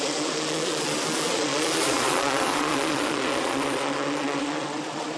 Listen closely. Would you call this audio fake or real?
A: fake